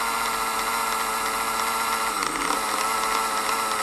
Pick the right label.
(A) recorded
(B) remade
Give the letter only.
A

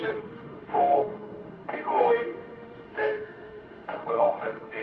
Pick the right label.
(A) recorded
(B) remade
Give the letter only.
B